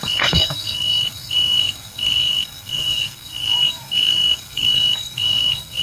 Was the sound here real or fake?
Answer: fake